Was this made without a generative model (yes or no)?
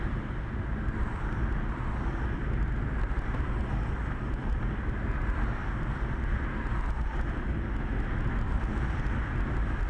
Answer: yes